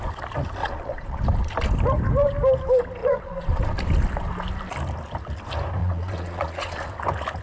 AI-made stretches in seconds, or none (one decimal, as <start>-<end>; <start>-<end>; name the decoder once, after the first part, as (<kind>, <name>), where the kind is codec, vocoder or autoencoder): 0.6-1.2 (vocoder, Vocos); 3.0-3.6; 5.8-6.9